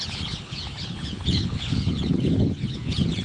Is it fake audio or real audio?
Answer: fake